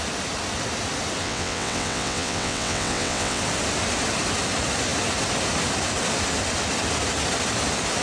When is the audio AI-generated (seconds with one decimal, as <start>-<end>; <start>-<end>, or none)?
1.2-3.4